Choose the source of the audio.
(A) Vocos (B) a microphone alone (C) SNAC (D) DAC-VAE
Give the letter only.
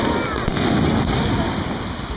B